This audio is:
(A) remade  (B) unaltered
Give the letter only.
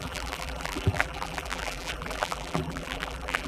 A